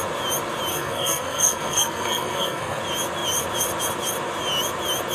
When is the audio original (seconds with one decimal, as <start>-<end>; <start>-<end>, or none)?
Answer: 0.0-0.7; 2.8-5.1